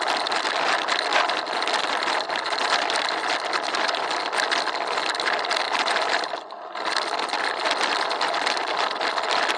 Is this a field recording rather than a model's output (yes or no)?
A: yes